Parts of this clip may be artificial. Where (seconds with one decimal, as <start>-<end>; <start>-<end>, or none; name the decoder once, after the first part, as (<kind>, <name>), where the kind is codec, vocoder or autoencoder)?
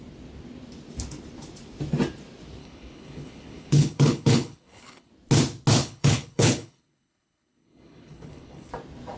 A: 2.6-5.1 (codec, HILCodec); 5.8-8.7